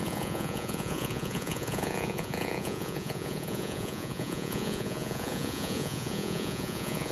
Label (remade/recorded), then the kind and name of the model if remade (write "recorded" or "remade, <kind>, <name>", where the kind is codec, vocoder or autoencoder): remade, vocoder, Vocos